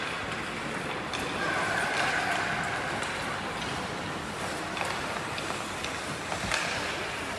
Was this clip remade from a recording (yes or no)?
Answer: no